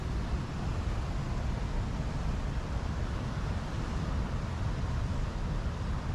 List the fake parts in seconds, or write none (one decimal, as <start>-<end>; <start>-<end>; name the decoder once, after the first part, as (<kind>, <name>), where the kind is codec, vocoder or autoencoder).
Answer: 0.0-0.7 (vocoder, BigVGAN v2); 4.4-6.1